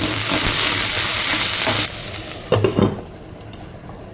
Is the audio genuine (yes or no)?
yes